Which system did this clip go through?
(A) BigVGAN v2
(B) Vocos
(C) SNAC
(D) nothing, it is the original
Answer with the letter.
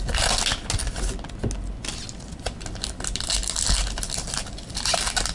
D